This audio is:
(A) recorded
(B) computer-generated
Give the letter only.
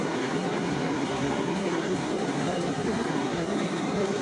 B